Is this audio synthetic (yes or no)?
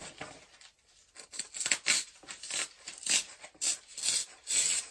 no